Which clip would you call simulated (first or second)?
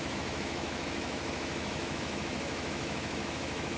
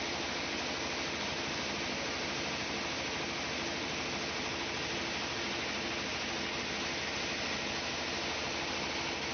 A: first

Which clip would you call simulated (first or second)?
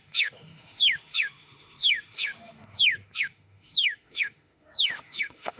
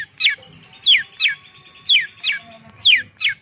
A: first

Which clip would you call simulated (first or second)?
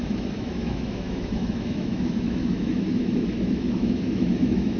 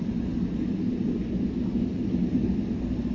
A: first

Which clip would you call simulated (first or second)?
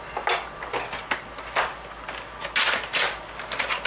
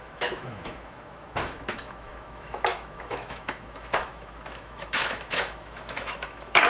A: second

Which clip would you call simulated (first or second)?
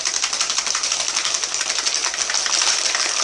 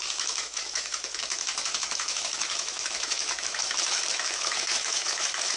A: second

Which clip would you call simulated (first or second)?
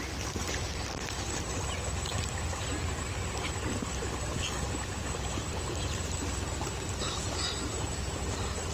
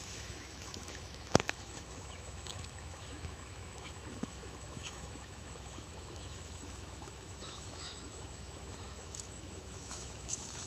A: second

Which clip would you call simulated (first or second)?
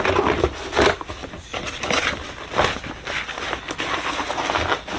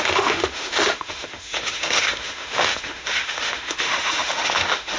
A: second